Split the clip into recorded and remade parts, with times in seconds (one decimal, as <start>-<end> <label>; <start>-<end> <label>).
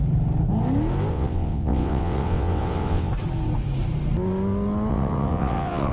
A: 0.0-1.1 recorded; 1.1-3.1 remade; 3.1-4.9 recorded; 4.9-5.9 remade